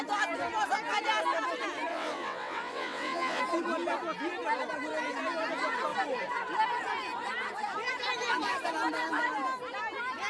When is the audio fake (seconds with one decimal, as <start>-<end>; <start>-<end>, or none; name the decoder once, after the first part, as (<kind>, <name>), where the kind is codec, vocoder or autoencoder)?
1.9-3.4 (vocoder, WaveNeXt)